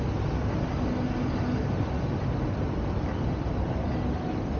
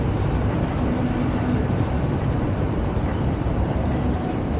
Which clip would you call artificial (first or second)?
second